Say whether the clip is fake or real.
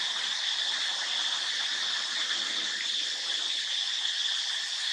real